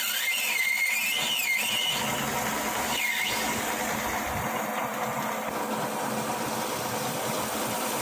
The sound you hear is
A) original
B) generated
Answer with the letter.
A